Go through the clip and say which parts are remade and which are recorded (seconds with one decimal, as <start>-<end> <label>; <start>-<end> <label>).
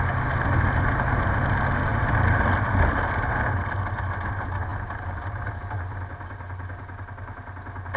0.0-8.0 recorded